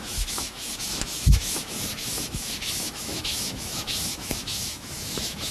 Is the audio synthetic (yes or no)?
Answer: yes